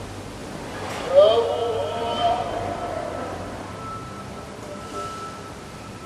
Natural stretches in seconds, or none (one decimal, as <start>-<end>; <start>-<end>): 0.0-1.8; 5.5-6.1